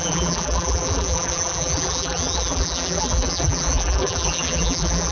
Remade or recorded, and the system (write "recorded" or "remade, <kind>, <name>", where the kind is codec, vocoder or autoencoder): remade, vocoder, BigVGAN v2